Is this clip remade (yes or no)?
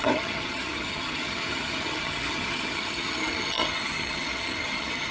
yes